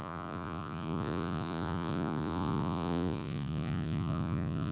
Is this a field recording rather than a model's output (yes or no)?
no